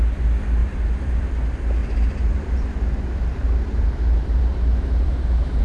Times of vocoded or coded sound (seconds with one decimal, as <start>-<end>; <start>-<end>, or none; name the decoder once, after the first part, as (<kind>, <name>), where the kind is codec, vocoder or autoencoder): 0.6-1.3 (vocoder, BigVGAN v2); 1.8-5.6